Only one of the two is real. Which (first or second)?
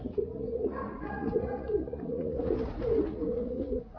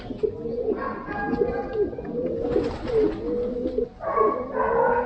second